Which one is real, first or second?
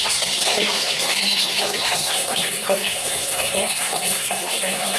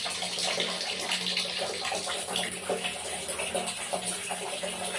second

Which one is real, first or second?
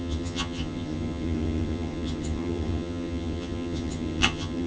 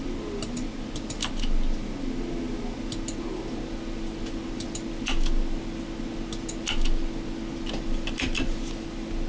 second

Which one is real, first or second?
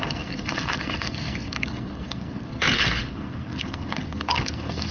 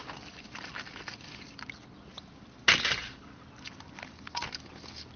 second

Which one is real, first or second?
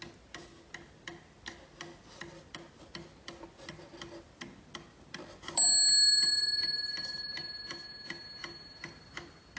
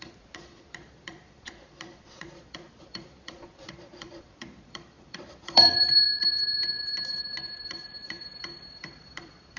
first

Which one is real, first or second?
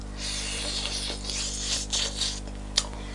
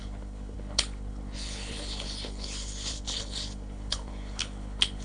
first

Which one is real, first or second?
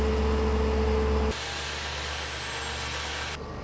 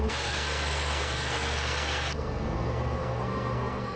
first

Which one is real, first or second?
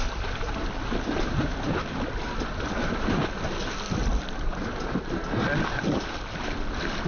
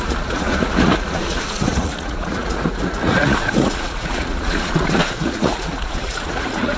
first